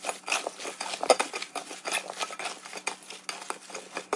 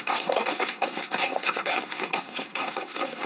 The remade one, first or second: second